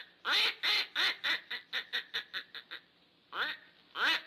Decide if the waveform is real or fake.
real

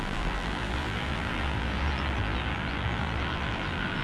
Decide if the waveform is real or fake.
fake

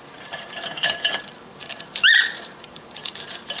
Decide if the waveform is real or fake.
fake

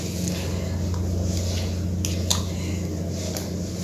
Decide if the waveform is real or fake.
real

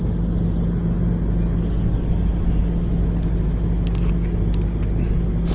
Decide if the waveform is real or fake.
real